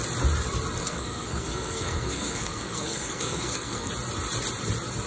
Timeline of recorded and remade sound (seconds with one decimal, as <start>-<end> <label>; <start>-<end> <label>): 0.0-0.8 recorded; 0.8-3.9 remade; 3.9-5.1 recorded